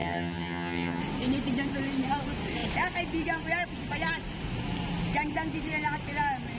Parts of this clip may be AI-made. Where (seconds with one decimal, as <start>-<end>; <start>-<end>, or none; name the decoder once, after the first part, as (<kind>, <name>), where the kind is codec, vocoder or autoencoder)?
0.0-1.0 (vocoder, HiFi-GAN)